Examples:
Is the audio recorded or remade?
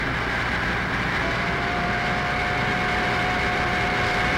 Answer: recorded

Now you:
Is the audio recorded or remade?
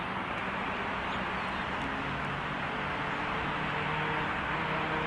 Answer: recorded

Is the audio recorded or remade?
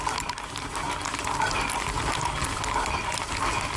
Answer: recorded